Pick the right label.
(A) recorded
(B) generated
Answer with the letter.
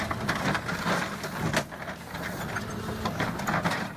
A